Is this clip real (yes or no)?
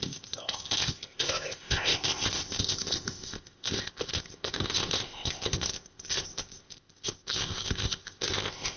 no